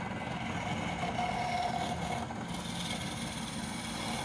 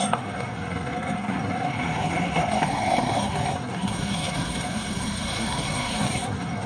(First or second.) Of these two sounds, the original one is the first